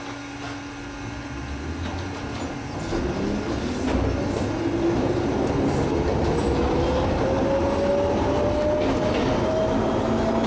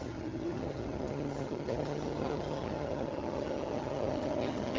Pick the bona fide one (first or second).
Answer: first